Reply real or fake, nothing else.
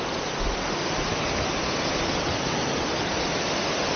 real